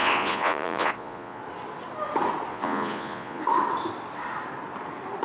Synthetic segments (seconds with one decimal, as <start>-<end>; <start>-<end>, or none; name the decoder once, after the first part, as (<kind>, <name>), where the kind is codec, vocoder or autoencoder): 0.0-1.4 (vocoder, Vocos); 2.5-3.4